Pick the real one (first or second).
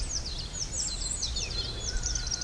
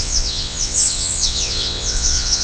first